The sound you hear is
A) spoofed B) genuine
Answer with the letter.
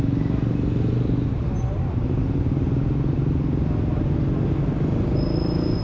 B